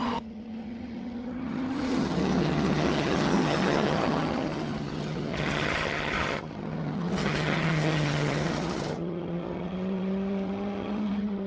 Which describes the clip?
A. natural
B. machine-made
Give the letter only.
B